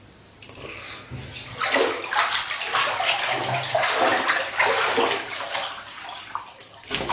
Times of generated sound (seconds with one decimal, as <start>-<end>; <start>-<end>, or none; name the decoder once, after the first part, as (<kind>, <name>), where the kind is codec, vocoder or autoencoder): none